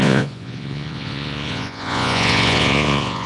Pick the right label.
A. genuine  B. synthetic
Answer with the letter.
B